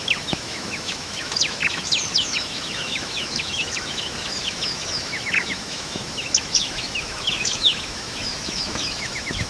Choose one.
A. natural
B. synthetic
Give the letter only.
B